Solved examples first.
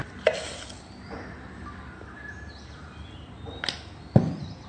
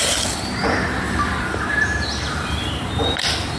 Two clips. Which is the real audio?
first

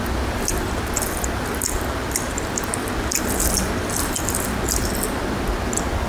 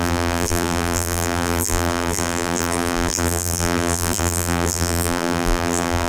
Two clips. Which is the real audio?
first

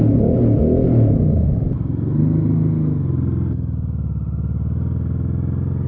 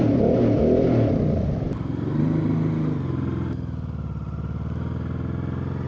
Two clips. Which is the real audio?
first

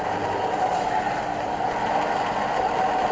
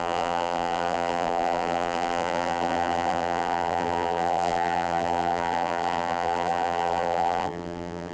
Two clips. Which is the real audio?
first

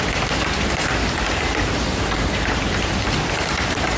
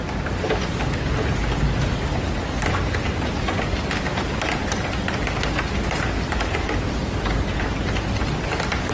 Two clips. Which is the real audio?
second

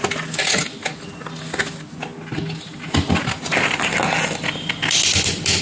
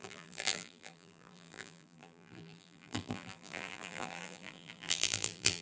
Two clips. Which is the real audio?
first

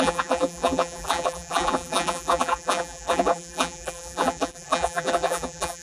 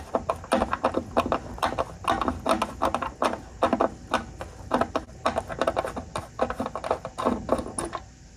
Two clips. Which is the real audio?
second